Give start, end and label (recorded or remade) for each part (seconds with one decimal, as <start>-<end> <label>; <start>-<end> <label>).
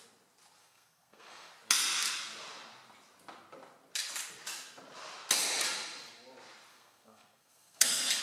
0.0-0.6 recorded; 0.6-1.5 remade; 1.5-6.7 recorded; 6.7-8.2 remade